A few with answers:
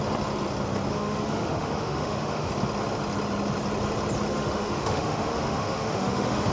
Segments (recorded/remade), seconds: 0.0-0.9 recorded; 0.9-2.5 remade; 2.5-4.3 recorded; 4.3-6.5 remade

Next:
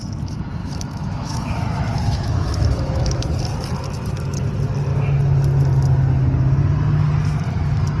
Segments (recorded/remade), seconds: 0.0-0.6 recorded; 0.6-3.2 remade; 3.2-8.0 recorded

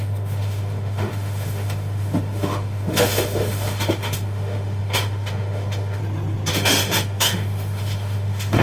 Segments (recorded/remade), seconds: 0.0-6.0 remade; 6.0-6.5 recorded; 6.5-8.6 remade

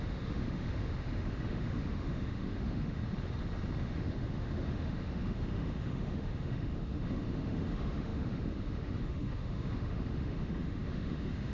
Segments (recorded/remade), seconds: 0.0-3.0 remade; 3.0-3.8 recorded; 3.8-11.5 remade

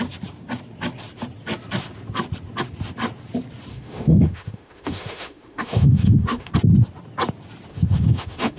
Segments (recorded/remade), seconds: 0.0-3.7 recorded; 3.7-6.5 remade; 6.5-7.7 recorded; 7.7-8.6 remade